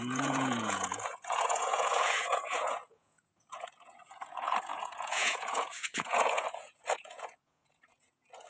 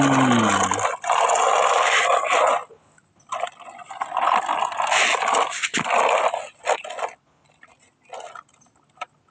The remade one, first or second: first